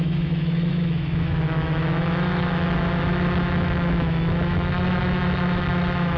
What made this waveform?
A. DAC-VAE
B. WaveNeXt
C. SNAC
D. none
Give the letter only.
A